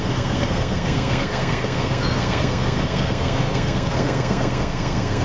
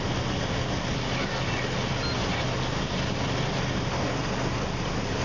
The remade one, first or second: first